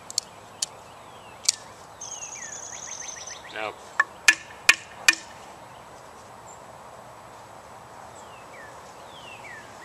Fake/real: real